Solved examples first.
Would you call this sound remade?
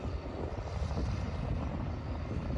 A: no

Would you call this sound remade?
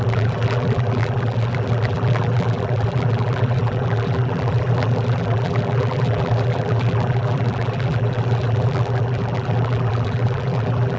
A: yes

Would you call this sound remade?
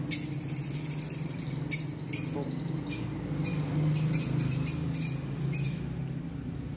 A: no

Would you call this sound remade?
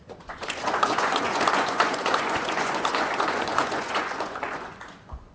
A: yes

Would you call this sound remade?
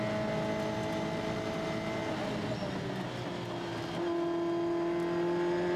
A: no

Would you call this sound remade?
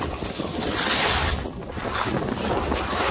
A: no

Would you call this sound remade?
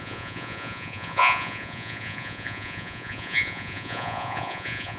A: yes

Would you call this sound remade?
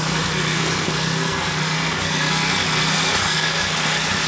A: yes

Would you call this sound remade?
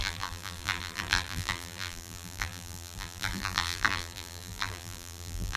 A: yes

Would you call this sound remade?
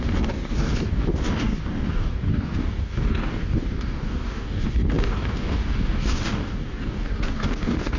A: yes